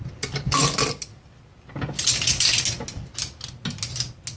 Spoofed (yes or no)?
no